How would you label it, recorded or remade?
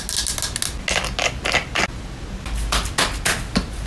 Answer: recorded